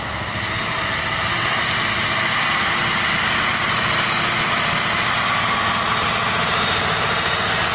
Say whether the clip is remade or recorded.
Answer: recorded